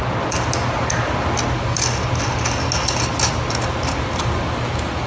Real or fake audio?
real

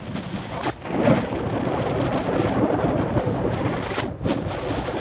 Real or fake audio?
real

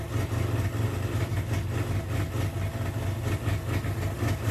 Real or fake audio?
real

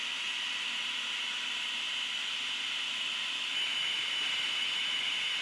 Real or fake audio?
real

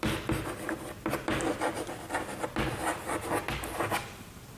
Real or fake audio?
real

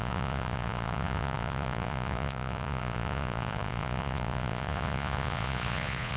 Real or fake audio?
fake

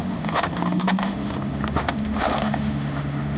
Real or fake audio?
fake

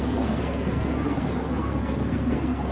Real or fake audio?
fake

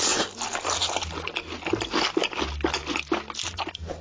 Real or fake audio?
real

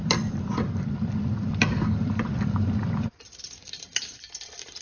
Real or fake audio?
fake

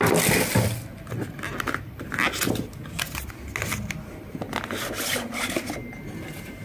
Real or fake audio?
real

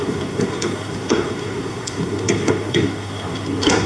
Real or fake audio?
fake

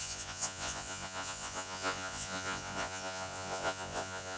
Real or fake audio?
fake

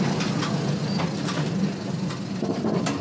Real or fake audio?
real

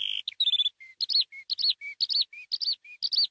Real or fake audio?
real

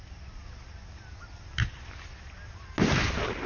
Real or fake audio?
real